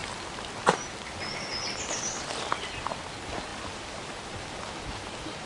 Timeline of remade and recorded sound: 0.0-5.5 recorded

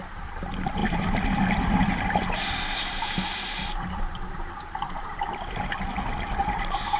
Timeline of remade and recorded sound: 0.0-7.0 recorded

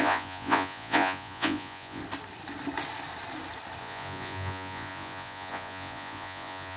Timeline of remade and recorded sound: 0.0-2.0 remade; 2.0-3.8 recorded; 3.8-6.8 remade